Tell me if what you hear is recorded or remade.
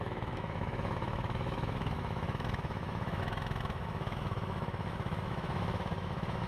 remade